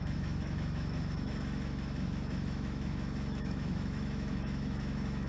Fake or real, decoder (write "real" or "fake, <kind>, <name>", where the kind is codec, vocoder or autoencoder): fake, autoencoder, DAC-VAE